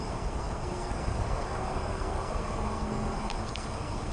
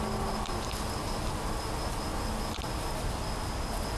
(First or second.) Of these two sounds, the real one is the second